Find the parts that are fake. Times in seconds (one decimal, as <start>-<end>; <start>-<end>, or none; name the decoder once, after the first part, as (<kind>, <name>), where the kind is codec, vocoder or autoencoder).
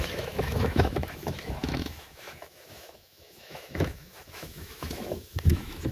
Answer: 0.0-5.9 (autoencoder, DAC-VAE)